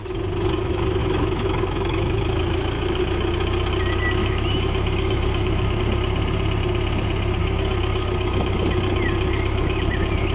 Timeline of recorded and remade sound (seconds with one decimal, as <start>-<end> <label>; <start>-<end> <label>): 0.0-1.0 recorded; 1.0-3.0 remade; 3.0-4.2 recorded; 4.2-5.8 remade; 5.8-7.4 recorded; 7.4-8.7 remade; 8.7-10.3 recorded